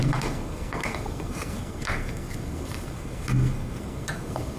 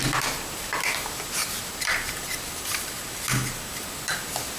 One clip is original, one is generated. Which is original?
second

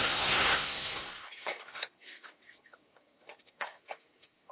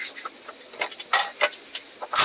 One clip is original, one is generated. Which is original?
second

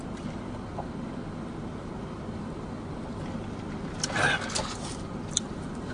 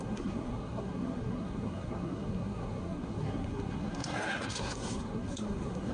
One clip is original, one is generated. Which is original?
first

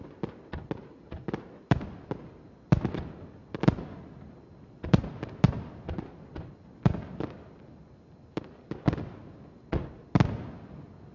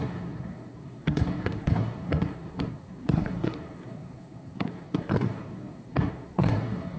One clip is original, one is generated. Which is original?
first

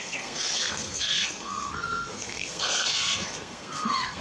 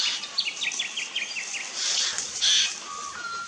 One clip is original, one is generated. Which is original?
second